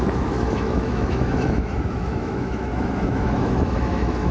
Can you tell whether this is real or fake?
fake